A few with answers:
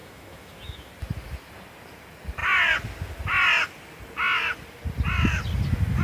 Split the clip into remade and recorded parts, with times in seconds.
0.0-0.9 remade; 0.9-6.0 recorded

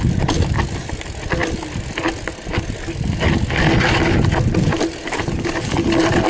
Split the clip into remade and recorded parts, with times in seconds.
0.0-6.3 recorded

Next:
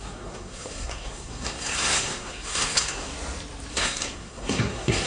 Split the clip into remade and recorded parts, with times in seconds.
0.0-3.1 remade; 3.1-3.7 recorded; 3.7-5.1 remade

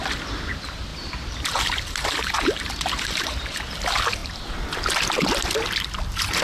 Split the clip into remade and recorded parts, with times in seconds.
0.0-0.9 recorded; 0.9-3.7 remade; 3.7-6.4 recorded